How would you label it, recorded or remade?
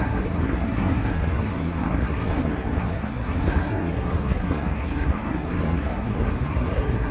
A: remade